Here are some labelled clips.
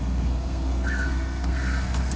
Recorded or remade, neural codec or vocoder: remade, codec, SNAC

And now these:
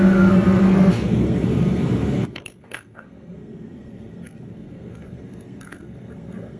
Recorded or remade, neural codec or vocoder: remade, codec, SNAC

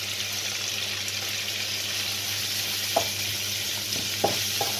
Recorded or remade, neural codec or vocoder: recorded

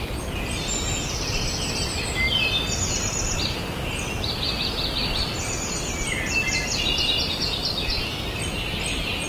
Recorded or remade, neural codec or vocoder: recorded